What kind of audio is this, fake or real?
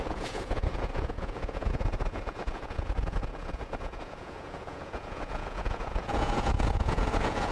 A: fake